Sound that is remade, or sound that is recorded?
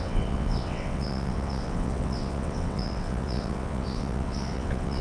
remade